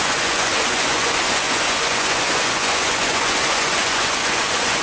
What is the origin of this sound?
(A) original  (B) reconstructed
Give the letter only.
B